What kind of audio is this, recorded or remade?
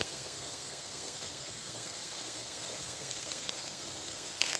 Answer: remade